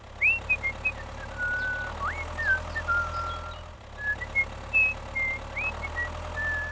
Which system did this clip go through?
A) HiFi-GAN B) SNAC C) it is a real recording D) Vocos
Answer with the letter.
C